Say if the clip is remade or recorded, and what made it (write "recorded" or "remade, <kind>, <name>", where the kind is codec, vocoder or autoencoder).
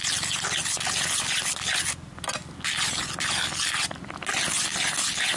recorded